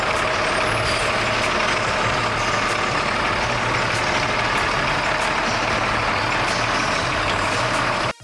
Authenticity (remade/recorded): recorded